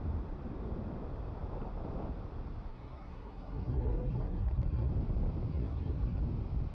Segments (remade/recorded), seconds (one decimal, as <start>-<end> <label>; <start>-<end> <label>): 0.0-2.7 recorded; 2.7-4.9 remade; 4.9-5.5 recorded; 5.5-6.2 remade; 6.2-6.7 recorded